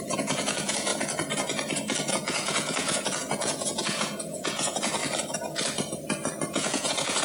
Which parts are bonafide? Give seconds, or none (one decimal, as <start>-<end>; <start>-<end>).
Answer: 0.9-2.1; 5.0-6.5